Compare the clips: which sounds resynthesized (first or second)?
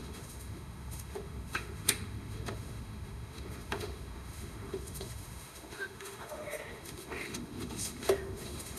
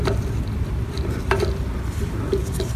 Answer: first